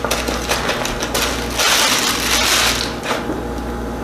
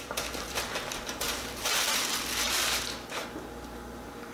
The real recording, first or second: first